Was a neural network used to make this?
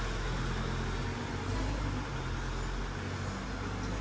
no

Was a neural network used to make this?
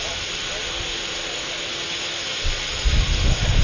no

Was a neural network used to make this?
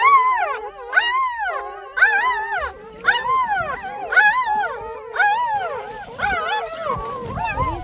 no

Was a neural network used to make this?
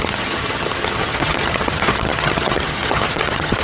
yes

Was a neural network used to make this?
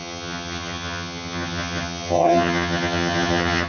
yes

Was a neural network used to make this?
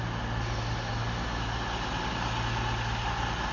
no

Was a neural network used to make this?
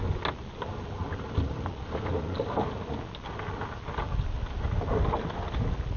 no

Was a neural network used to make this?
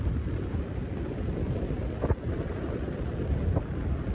no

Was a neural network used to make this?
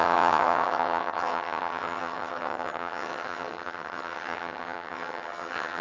yes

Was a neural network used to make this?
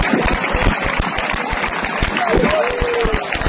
no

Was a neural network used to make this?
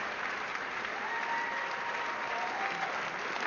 no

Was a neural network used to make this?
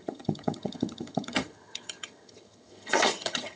yes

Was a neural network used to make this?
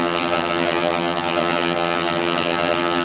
yes